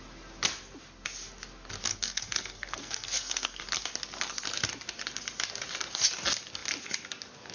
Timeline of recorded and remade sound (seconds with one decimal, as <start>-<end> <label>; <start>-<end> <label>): 0.0-1.9 recorded; 1.9-3.6 remade; 3.6-7.5 recorded